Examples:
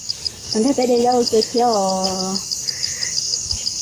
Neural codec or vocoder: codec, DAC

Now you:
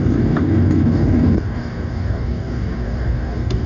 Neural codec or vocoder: codec, DAC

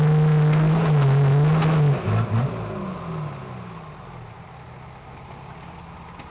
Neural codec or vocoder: none